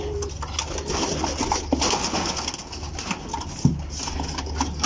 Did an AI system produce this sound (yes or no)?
no